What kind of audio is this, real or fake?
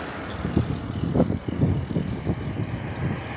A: real